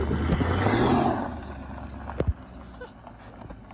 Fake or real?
real